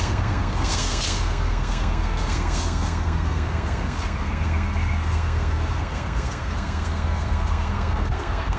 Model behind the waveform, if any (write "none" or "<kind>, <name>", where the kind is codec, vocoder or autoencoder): codec, SNAC